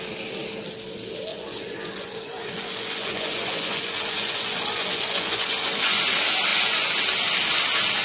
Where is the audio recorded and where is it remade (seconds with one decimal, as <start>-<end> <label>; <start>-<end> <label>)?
0.0-1.3 recorded; 1.3-6.0 remade; 6.0-6.5 recorded; 6.5-7.0 remade; 7.0-8.0 recorded